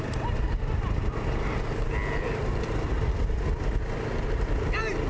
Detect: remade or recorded recorded